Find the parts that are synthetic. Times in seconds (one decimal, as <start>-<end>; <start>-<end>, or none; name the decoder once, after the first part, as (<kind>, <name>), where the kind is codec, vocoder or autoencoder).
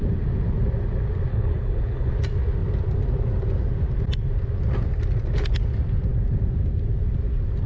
1.3-2.1 (codec, HILCodec)